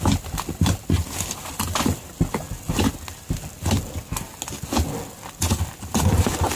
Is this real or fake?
real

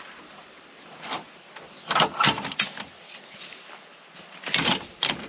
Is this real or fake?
real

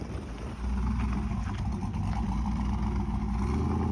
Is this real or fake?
real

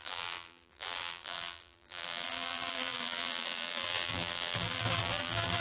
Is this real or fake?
fake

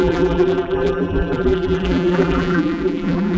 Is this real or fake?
fake